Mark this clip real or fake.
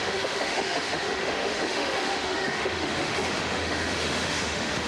fake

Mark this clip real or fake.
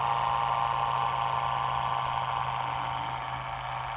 real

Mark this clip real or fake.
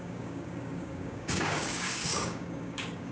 fake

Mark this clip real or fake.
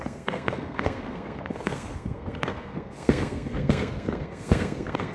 fake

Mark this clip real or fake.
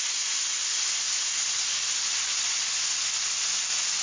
real